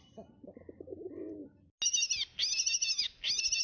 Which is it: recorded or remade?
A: recorded